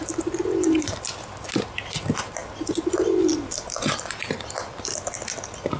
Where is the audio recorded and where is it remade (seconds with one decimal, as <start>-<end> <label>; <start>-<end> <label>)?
0.0-5.8 recorded